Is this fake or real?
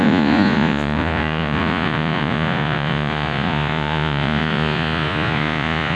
fake